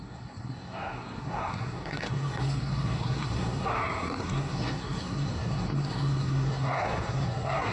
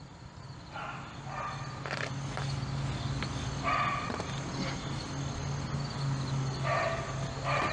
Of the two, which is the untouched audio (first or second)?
second